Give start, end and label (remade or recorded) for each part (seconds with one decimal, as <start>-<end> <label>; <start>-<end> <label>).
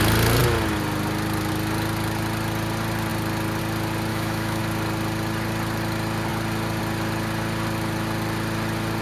0.0-4.1 recorded; 4.1-4.6 remade; 4.6-9.0 recorded